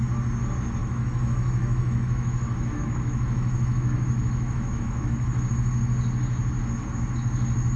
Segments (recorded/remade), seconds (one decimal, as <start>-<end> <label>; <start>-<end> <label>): 0.0-0.8 recorded; 0.8-5.5 remade; 5.5-7.8 recorded